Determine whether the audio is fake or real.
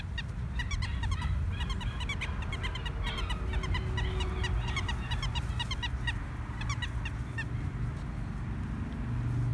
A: real